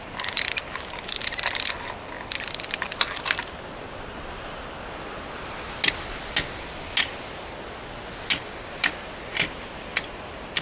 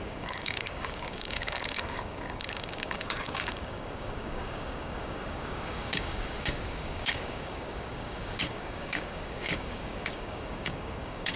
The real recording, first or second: first